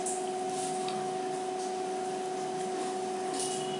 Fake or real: real